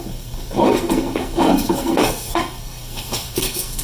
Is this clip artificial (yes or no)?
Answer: yes